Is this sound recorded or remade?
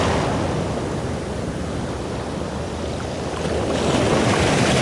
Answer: recorded